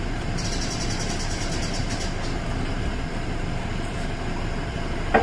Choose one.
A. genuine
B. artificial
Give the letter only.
B